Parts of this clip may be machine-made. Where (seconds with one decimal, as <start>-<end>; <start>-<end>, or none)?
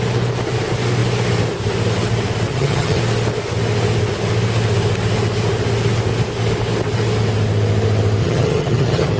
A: 2.5-3.0; 8.2-9.2